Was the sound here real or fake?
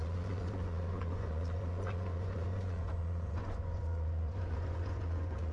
fake